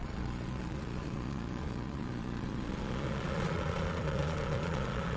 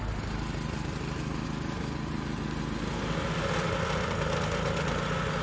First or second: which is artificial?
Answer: first